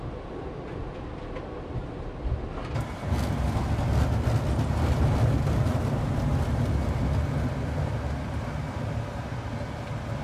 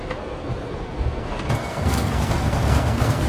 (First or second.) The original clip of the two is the first